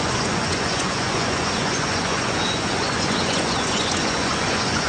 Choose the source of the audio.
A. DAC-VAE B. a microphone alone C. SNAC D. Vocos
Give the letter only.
D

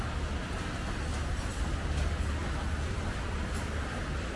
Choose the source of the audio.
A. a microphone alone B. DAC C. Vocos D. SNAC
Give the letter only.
A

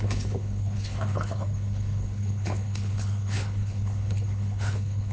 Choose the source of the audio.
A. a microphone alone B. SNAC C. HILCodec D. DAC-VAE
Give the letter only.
C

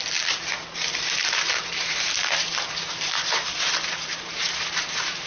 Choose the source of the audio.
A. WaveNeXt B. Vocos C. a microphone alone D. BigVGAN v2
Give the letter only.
D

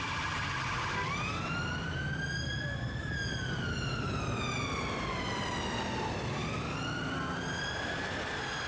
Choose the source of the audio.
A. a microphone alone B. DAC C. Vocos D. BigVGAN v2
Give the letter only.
A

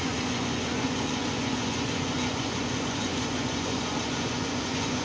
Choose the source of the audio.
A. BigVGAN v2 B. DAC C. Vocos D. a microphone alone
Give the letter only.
C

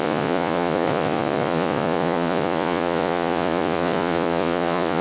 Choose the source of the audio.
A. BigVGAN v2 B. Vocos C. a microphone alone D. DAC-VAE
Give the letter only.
B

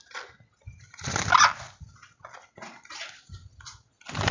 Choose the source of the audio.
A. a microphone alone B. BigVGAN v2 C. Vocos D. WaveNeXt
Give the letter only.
A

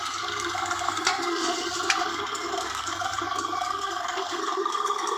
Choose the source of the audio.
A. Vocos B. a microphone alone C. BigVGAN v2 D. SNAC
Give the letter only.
D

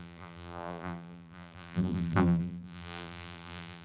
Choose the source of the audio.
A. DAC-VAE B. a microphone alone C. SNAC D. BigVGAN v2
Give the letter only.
D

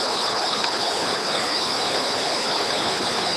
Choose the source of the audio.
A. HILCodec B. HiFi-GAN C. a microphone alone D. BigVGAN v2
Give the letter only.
A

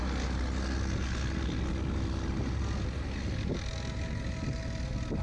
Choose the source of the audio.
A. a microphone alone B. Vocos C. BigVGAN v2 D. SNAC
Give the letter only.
A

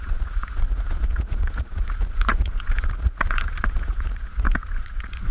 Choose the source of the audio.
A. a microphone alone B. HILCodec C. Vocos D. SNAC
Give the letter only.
C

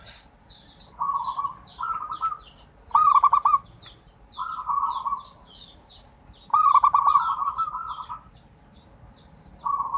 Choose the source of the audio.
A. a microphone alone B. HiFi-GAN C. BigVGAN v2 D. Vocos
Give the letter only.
A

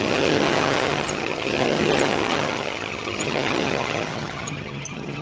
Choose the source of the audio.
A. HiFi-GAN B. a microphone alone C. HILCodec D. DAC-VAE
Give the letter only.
A